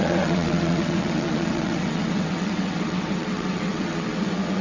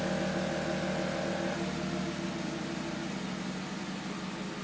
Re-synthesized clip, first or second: first